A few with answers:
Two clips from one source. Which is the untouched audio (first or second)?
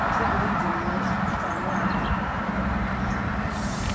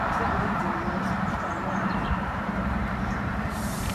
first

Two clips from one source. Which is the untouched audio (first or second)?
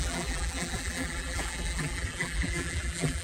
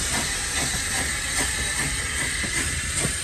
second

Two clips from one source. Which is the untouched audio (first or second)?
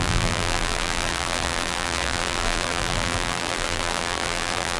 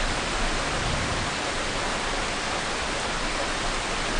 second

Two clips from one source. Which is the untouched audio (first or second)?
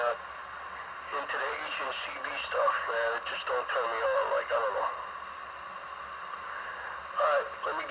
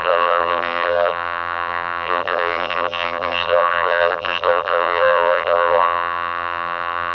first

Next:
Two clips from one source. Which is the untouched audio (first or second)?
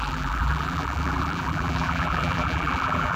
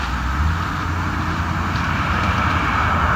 second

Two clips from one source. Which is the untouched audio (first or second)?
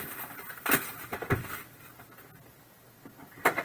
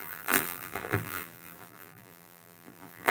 first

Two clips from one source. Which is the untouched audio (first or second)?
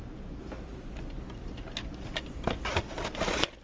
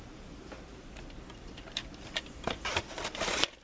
first